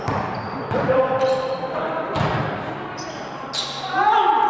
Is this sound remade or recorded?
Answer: recorded